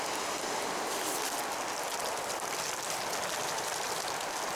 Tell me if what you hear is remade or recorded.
recorded